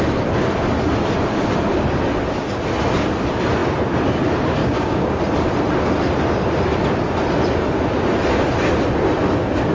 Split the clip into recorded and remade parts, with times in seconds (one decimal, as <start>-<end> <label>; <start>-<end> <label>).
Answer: 0.0-4.6 recorded; 4.6-5.2 remade; 5.2-9.7 recorded